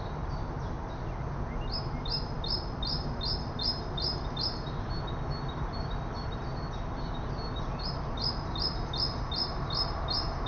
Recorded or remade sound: recorded